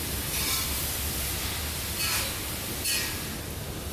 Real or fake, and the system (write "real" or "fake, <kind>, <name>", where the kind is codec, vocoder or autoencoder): real